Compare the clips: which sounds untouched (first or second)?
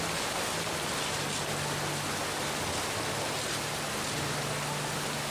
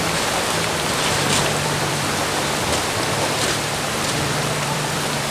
first